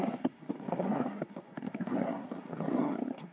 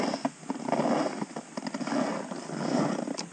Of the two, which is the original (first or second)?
second